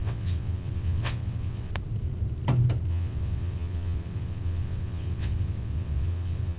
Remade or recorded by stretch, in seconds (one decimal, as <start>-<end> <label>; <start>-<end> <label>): 0.0-1.7 remade; 1.7-2.9 recorded; 2.9-6.6 remade